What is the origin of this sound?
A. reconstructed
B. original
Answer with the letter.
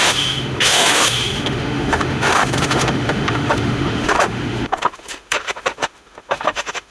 A